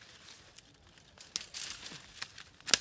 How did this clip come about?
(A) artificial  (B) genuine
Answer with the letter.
B